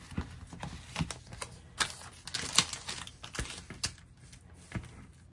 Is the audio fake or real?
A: real